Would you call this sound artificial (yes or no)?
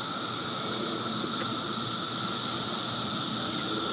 no